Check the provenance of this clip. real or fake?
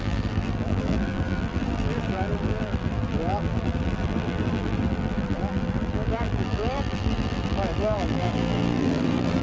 fake